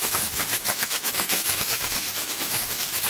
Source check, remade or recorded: remade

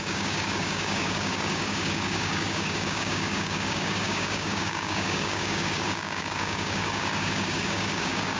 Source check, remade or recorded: remade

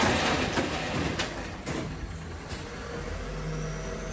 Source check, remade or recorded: recorded